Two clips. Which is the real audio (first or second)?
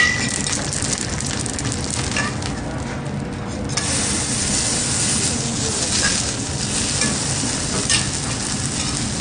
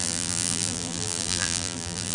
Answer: first